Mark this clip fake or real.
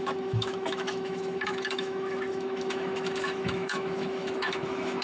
fake